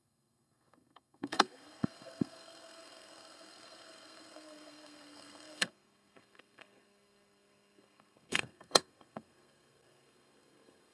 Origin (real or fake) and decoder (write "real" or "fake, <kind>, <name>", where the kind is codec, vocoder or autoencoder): fake, codec, SNAC